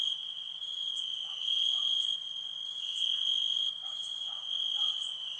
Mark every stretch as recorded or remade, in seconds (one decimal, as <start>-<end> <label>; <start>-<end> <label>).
0.0-5.4 remade